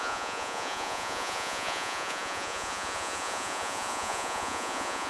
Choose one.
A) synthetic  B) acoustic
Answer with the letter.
A